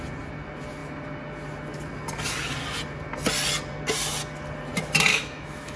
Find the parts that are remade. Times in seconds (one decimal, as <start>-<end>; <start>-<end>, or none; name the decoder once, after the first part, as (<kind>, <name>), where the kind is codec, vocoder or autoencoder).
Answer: 5.1-5.8 (autoencoder, DAC-VAE)